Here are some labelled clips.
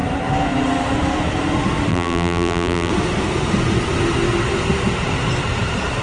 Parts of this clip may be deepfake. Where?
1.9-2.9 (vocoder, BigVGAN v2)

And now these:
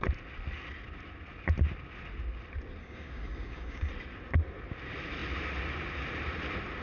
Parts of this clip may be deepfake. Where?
2.8-3.9 (codec, DAC)

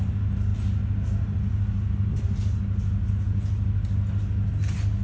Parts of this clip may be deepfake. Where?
none

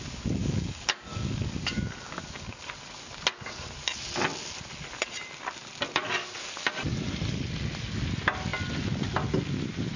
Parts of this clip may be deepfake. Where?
0.4-2.6 (codec, DAC)